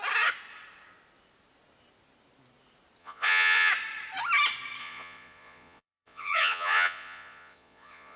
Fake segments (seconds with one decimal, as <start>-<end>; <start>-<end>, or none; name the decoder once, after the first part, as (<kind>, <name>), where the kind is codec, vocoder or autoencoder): 3.0-3.7 (vocoder, Vocos); 4.8-8.2